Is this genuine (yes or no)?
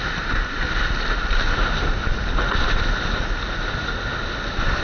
yes